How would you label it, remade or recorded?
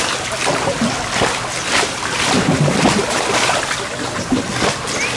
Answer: recorded